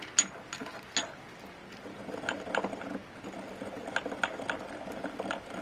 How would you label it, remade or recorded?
recorded